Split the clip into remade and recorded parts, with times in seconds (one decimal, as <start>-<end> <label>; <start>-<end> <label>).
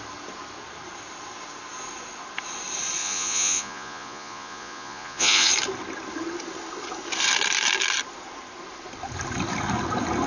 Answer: 0.0-3.0 recorded; 3.0-5.5 remade; 5.5-10.3 recorded